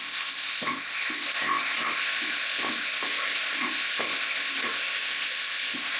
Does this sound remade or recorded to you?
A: remade